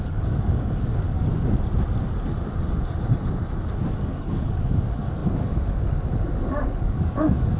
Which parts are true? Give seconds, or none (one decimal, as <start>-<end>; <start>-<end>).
1.3-4.1